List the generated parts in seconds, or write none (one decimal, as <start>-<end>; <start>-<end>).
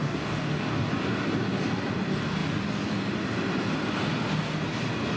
0.0-0.9